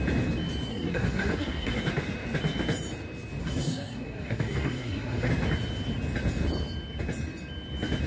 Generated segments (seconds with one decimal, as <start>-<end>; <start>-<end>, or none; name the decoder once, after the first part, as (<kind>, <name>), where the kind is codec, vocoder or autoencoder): 0.7-1.8 (codec, SNAC); 3.4-5.3